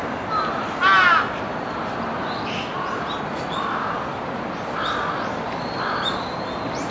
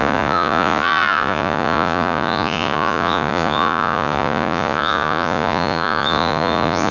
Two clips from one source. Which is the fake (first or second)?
second